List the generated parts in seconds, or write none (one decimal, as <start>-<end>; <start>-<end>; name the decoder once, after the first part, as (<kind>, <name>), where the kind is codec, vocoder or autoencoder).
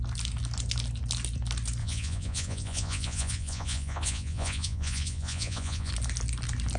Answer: 1.8-5.9 (vocoder, Vocos)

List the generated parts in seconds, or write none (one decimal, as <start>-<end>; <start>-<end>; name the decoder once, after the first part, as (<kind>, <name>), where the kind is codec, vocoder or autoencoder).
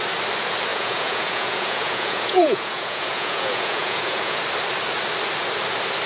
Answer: 0.7-4.4 (vocoder, Vocos)